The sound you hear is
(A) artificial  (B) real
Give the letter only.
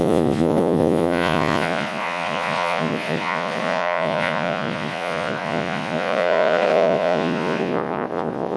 A